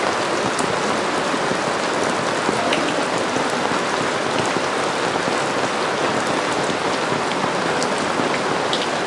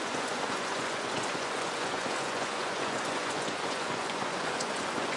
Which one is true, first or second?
first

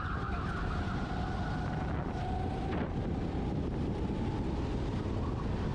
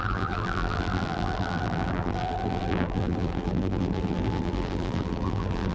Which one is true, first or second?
first